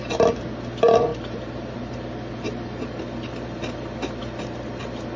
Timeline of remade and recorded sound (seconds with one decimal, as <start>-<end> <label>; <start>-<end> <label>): 0.0-5.2 recorded

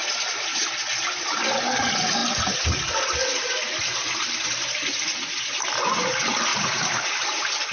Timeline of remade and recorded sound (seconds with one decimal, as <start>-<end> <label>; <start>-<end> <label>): 0.0-6.5 recorded; 6.5-7.2 remade; 7.2-7.7 recorded

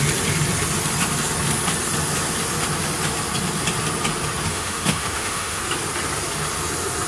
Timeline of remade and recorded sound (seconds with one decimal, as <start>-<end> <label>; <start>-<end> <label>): 0.0-4.5 recorded; 4.5-5.6 remade; 5.6-7.1 recorded